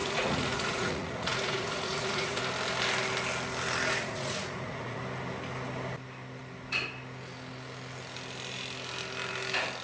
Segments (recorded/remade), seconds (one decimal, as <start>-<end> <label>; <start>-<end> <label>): 0.0-2.4 remade; 2.4-3.9 recorded; 3.9-5.0 remade; 5.0-9.8 recorded